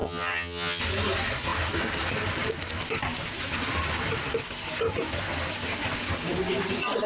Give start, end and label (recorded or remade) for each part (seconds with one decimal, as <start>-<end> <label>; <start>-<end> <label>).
0.0-0.8 remade; 0.8-7.1 recorded